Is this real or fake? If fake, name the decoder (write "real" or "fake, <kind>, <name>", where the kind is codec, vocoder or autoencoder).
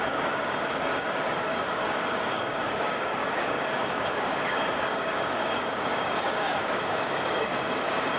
fake, codec, DAC